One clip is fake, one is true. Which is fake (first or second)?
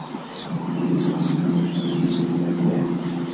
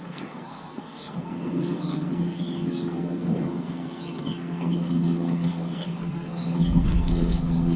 second